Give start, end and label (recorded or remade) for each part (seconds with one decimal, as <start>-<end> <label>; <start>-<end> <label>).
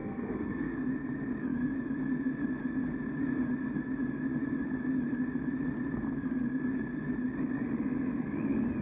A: 0.0-0.8 remade; 0.8-8.8 recorded